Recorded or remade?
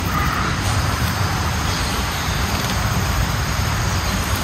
remade